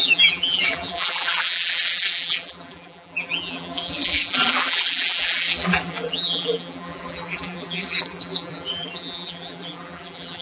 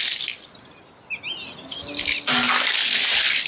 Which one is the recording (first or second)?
second